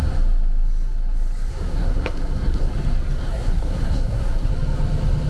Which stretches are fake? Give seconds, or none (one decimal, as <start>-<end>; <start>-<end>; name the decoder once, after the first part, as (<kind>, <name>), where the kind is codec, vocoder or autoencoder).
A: 1.5-2.7 (codec, SNAC); 3.2-4.5